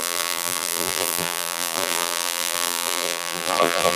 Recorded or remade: remade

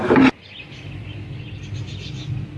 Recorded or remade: recorded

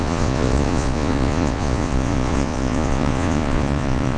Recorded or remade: remade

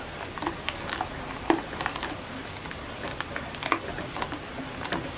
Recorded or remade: recorded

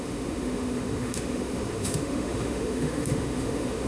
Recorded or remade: remade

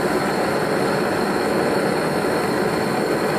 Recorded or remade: recorded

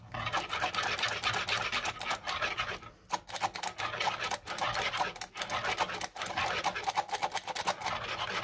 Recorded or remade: recorded